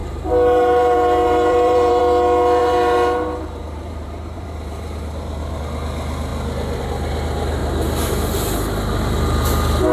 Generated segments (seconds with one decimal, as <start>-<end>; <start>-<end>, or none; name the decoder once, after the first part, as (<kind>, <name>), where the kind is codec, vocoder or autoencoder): 0.0-2.0 (vocoder, BigVGAN v2); 2.6-5.6; 7.6-8.1